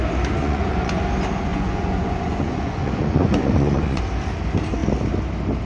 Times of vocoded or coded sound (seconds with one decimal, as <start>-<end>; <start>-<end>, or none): 0.4-1.0; 1.5-4.0